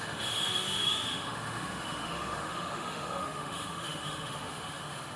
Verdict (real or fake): fake